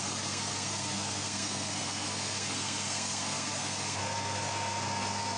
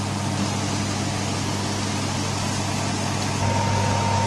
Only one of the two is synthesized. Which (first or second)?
first